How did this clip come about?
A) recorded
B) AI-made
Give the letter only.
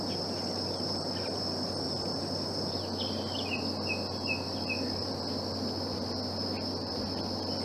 A